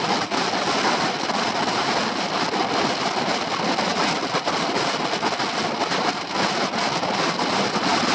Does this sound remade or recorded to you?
recorded